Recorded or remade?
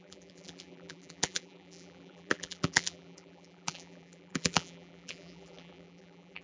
remade